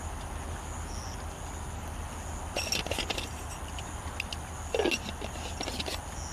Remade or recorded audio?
recorded